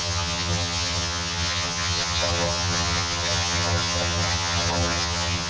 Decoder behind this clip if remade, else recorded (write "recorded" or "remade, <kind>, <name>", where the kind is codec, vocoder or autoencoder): remade, vocoder, HiFi-GAN